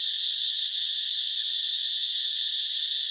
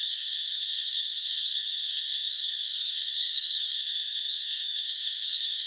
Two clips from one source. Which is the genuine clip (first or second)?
first